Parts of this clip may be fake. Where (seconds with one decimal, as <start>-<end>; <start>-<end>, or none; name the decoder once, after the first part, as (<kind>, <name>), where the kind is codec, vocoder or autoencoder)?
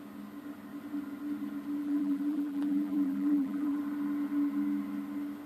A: 1.8-3.8 (vocoder, BigVGAN v2)